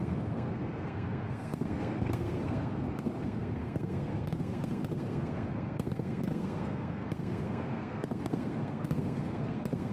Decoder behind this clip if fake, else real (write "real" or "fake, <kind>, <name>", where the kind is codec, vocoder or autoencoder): fake, codec, SNAC